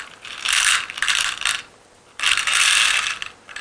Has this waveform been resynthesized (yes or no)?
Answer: no